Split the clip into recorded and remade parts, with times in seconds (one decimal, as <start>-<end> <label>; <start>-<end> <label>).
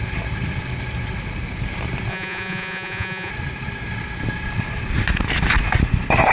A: 0.0-2.1 recorded; 2.1-3.3 remade; 3.3-6.3 recorded